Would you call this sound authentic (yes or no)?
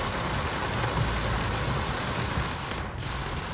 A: yes